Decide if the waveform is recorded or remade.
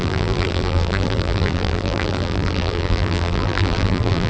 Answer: remade